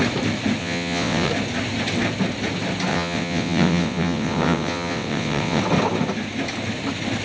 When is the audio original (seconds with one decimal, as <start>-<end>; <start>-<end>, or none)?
0.0-0.6; 1.3-2.9; 5.6-7.2